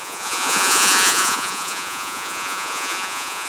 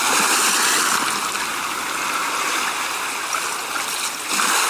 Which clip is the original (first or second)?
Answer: second